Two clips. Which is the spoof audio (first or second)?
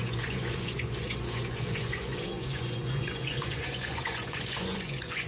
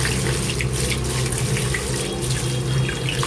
first